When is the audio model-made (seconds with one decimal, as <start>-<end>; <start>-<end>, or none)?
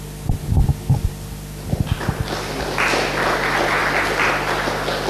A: none